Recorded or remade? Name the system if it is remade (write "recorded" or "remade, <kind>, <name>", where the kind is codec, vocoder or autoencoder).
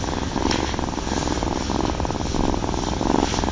recorded